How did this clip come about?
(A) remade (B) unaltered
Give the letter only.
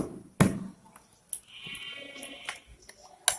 B